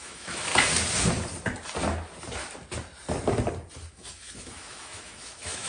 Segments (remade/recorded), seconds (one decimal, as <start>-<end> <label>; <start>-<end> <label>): 0.0-0.5 remade; 0.5-3.9 recorded; 3.9-5.7 remade